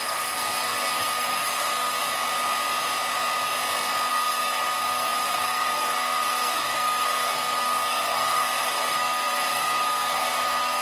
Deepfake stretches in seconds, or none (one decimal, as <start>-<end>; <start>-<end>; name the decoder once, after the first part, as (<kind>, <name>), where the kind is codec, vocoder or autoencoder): 0.0-2.0 (codec, SNAC); 4.1-10.8